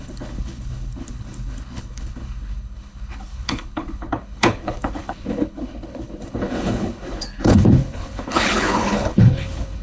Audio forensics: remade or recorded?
remade